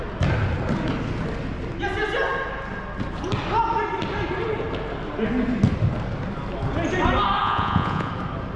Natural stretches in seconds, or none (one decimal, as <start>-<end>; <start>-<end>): 0.0-7.4; 8.1-8.6